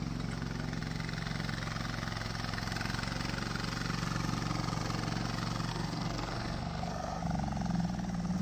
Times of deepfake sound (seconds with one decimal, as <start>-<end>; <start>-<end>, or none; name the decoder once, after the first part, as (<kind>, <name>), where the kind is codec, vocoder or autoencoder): 5.7-7.2 (codec, SNAC)